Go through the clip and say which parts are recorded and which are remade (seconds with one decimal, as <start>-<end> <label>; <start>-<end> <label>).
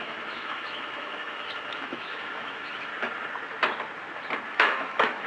0.0-2.9 remade; 2.9-4.5 recorded; 4.5-5.3 remade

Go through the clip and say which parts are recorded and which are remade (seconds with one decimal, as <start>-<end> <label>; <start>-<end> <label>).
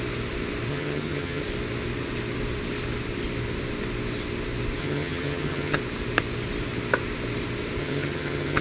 0.0-0.7 recorded; 0.7-1.4 remade; 1.4-4.8 recorded; 4.8-5.8 remade; 5.8-7.8 recorded; 7.8-8.6 remade